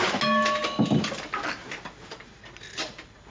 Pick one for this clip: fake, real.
real